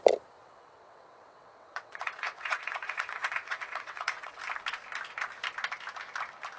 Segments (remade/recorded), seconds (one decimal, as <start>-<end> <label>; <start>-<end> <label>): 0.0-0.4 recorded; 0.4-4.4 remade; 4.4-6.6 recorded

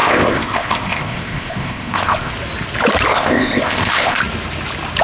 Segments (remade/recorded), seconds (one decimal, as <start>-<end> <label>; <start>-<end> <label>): 0.0-2.3 remade; 2.3-3.1 recorded; 3.1-4.2 remade; 4.2-5.0 recorded

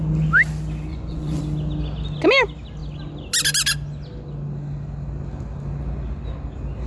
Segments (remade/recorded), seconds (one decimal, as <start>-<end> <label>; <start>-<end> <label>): 0.0-0.9 recorded; 0.9-1.4 remade; 1.4-6.9 recorded

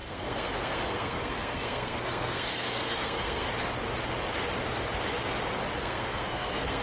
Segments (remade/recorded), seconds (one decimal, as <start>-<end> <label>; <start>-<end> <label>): 0.0-3.4 remade; 3.4-5.8 recorded; 5.8-6.8 remade

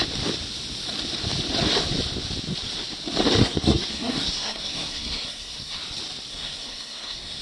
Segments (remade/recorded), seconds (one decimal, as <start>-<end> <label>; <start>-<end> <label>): 0.0-3.4 recorded; 3.4-5.8 remade; 5.8-6.3 recorded; 6.3-7.4 remade

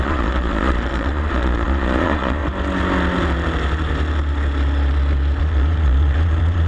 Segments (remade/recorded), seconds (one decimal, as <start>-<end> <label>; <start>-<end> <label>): 0.0-2.4 remade; 2.4-5.4 recorded; 5.4-6.7 remade

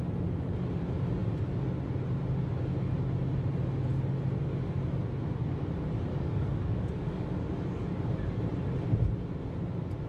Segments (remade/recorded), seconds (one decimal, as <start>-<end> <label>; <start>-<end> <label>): 0.0-6.1 recorded; 6.1-8.4 remade; 8.4-10.1 recorded

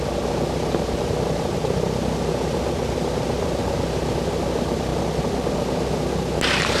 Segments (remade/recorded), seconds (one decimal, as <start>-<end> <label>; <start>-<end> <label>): 0.0-6.8 recorded